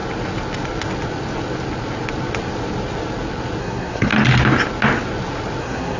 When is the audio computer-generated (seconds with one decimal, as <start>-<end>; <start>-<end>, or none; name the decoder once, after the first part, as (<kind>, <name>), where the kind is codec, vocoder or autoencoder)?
3.6-4.1 (codec, SNAC); 5.6-6.0